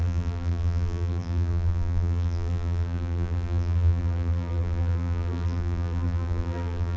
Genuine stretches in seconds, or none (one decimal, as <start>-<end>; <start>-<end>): none

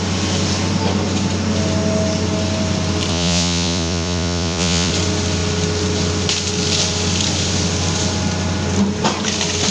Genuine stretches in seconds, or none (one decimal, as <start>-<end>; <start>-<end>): 0.0-3.1; 4.9-9.7

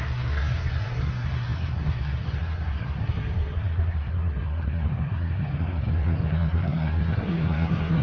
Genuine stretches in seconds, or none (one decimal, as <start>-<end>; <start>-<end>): none